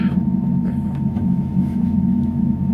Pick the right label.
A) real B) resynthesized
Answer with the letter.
B